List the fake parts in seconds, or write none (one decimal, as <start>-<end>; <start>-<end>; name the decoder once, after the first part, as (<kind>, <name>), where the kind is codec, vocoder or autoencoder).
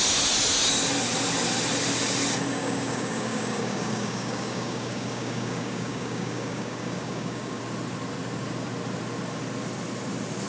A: 2.5-7.6 (codec, DAC)